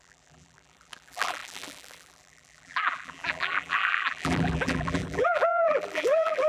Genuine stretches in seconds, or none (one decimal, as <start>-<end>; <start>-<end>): none